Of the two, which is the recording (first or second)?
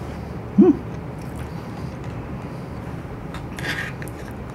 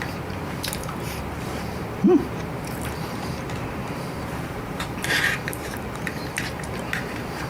first